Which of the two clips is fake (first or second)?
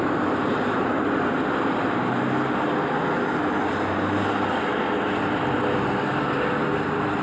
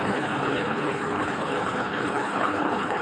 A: second